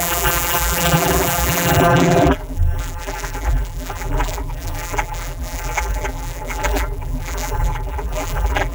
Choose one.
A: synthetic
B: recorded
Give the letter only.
A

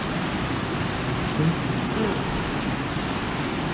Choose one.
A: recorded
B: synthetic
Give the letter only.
A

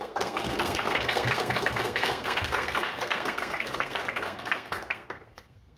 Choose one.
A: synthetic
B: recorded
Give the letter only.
A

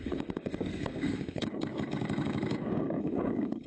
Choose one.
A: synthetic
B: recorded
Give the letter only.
A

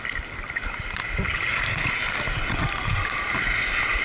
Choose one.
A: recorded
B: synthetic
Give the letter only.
A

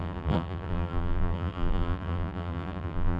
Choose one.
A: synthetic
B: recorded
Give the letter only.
A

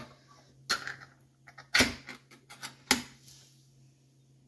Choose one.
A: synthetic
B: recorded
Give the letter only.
B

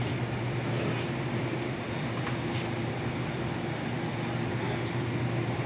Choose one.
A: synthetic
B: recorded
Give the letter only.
B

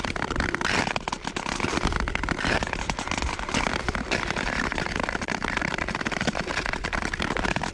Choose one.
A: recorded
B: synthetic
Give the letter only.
A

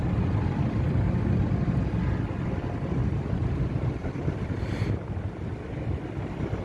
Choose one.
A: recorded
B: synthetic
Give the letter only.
A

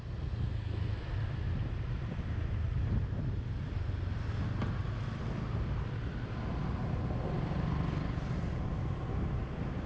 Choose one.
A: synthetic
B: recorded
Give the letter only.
B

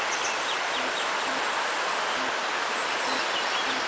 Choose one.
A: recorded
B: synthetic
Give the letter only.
A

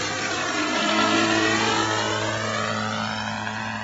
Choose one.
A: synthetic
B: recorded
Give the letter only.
B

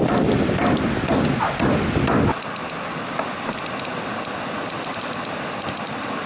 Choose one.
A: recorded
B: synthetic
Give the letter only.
A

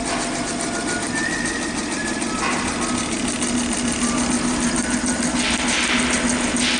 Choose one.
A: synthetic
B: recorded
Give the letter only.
B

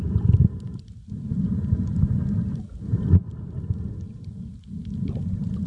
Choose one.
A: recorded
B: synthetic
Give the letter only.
A